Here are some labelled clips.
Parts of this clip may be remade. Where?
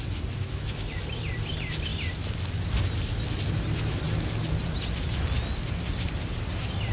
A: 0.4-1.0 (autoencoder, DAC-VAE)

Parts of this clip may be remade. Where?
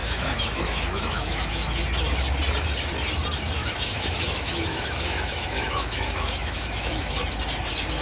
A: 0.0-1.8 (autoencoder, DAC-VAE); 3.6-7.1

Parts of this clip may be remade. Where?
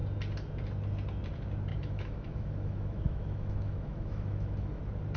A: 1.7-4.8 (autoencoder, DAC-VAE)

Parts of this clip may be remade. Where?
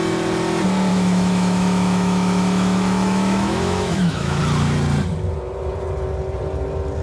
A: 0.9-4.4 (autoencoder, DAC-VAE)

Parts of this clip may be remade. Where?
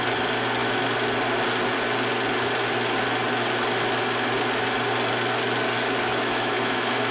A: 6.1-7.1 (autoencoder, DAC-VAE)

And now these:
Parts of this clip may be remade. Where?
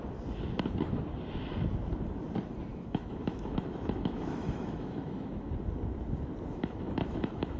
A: 2.7-5.5 (autoencoder, DAC-VAE); 6.5-7.6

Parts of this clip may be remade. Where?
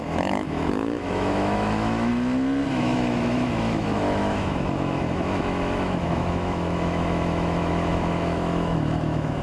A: 0.0-2.1 (autoencoder, DAC-VAE); 2.7-9.4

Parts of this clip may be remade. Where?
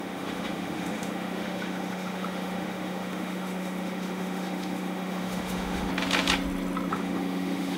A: 0.0-5.9 (autoencoder, DAC-VAE); 6.9-7.8